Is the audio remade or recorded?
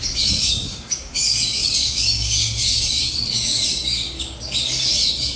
remade